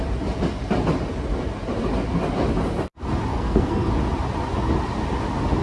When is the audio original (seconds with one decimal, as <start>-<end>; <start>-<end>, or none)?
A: 0.0-3.3; 3.9-5.6